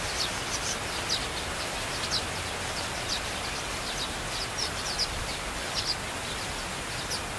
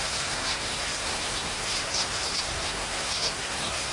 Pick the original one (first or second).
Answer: first